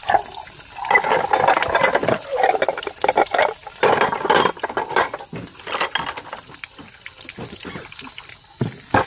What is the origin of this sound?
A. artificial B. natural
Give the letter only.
B